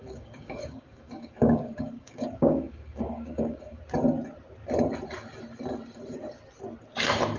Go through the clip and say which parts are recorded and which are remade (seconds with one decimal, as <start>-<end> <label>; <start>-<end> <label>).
0.0-3.8 remade; 3.8-7.4 recorded